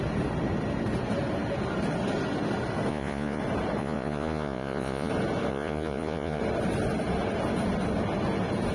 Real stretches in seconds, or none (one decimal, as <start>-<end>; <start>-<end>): 0.0-2.9; 3.4-3.8; 5.1-5.5; 6.4-8.7